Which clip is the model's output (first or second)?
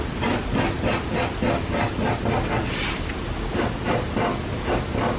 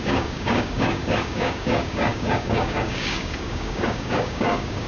second